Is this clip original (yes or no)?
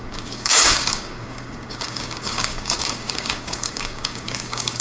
no